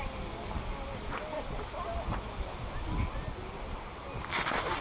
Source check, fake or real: real